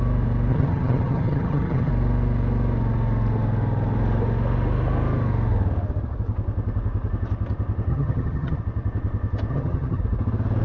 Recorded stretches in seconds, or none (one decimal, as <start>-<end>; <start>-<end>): 0.0-0.5; 1.9-7.9; 8.6-9.5; 10.0-10.6